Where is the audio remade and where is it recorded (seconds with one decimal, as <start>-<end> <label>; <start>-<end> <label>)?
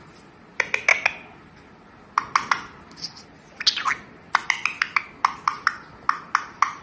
0.0-6.8 recorded